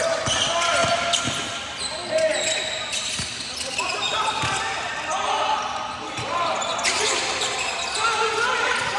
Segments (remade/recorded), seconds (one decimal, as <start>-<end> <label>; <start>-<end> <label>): 0.0-0.8 recorded; 0.8-1.4 remade; 1.4-4.1 recorded; 4.1-5.1 remade; 5.1-9.0 recorded